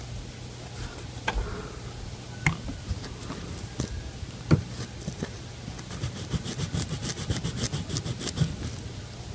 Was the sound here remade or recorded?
recorded